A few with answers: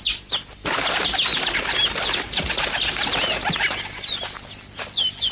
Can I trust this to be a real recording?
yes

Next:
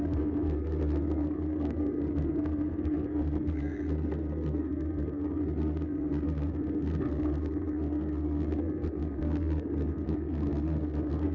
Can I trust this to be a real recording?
no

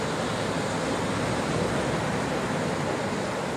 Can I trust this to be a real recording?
yes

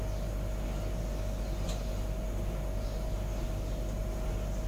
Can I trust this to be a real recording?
yes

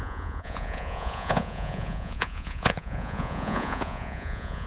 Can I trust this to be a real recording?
no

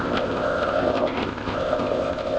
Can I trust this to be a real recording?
no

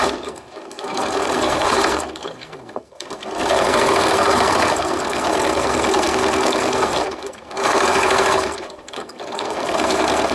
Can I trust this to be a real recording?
no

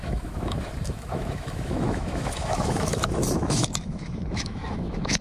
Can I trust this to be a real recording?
no